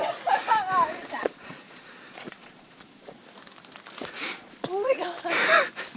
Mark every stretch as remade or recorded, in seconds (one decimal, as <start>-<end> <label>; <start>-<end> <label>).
0.0-0.9 recorded; 0.9-3.2 remade; 3.2-4.2 recorded; 4.2-5.0 remade; 5.0-6.0 recorded